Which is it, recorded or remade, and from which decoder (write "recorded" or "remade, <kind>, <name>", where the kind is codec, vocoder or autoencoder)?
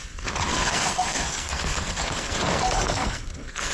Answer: remade, codec, SNAC